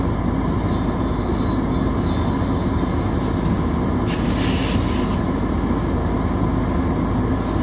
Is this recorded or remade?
recorded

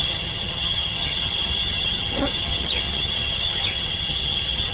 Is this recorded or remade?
remade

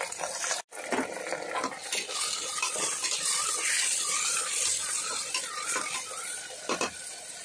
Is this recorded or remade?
recorded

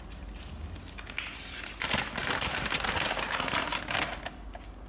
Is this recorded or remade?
recorded